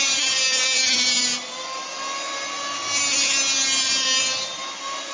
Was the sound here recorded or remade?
recorded